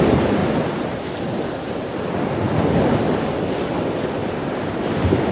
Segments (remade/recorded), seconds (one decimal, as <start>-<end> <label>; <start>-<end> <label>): 0.0-0.4 recorded; 0.4-2.6 remade; 2.6-4.2 recorded; 4.2-5.3 remade